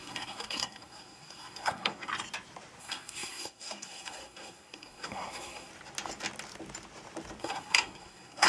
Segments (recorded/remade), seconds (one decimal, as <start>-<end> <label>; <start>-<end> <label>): 0.0-2.1 remade; 2.1-2.8 recorded; 2.8-5.7 remade; 5.7-7.4 recorded; 7.4-8.5 remade